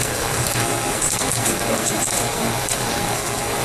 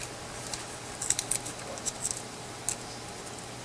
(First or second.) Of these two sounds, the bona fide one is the second